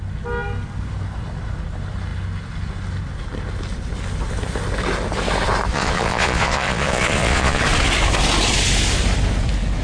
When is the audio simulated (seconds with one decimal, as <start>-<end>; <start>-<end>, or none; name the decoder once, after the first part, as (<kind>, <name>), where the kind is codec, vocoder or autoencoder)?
5.7-7.6 (vocoder, Vocos)